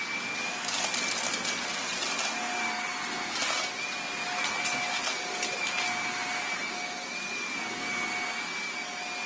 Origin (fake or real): real